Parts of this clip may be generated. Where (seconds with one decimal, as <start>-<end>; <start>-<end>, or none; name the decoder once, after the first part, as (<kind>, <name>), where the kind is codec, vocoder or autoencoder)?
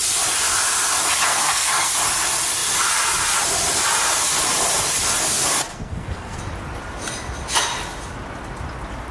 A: 1.3-1.9 (codec, SNAC); 5.7-6.4